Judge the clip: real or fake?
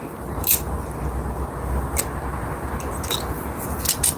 real